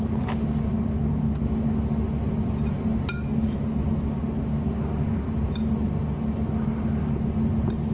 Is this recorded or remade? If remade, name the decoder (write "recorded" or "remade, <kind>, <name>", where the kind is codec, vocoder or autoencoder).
recorded